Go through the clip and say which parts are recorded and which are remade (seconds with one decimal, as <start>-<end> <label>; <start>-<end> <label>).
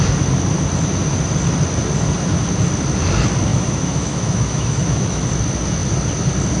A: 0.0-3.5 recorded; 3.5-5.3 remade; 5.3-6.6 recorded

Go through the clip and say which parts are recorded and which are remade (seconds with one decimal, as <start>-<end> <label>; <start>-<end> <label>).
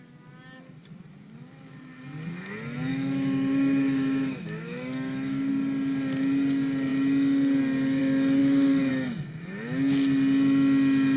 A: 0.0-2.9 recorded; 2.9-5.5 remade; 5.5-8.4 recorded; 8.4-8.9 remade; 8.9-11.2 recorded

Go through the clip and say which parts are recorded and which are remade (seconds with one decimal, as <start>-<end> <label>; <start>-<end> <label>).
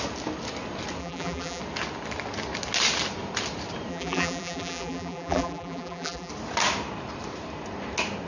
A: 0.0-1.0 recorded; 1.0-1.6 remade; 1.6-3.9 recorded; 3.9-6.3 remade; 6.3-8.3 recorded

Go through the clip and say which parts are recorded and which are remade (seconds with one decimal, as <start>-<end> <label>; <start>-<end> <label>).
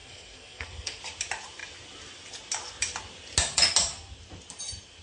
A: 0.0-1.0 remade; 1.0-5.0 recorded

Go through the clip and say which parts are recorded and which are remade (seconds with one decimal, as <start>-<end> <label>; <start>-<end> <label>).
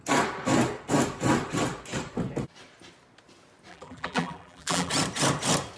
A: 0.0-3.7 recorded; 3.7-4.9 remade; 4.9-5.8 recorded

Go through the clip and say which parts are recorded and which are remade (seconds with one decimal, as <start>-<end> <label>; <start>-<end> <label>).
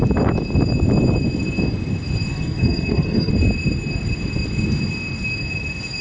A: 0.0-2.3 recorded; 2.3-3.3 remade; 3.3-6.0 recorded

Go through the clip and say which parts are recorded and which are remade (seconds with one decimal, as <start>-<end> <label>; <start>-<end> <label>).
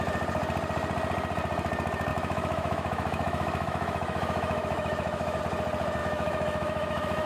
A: 0.0-2.1 recorded; 2.1-5.4 remade; 5.4-6.0 recorded; 6.0-7.3 remade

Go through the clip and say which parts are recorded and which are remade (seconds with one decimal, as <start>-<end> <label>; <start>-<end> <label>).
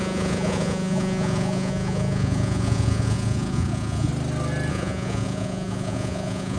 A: 0.0-4.1 remade; 4.1-4.7 recorded; 4.7-6.6 remade